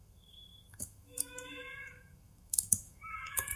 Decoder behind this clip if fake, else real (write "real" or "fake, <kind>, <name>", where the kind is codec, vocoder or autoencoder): fake, autoencoder, DAC-VAE